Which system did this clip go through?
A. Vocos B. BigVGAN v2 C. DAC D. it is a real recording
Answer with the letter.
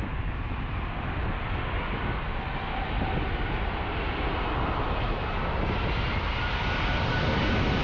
D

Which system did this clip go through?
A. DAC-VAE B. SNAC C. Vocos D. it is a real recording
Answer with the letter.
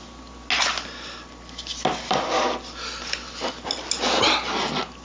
D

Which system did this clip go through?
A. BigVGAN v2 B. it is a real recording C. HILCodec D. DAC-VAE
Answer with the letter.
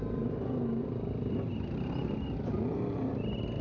B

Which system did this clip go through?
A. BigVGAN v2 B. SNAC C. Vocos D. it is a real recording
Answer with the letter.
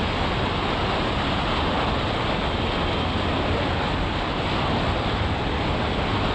D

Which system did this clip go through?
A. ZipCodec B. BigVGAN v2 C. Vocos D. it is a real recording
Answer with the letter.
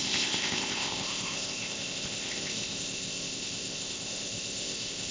A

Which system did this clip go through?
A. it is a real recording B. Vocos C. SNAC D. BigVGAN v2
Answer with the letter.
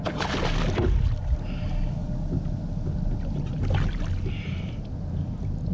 A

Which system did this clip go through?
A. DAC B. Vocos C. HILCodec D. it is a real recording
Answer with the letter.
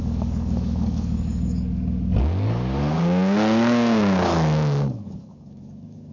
A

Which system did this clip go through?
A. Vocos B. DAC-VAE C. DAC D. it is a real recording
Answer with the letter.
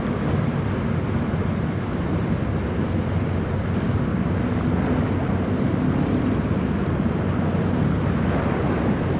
D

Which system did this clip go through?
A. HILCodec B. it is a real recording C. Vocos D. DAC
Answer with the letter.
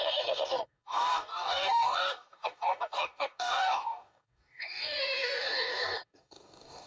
D